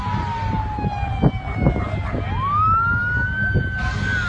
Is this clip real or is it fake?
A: real